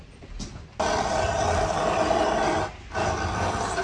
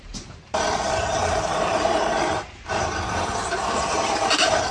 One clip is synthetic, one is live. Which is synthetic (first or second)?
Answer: second